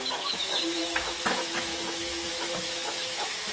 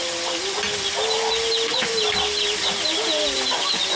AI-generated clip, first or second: first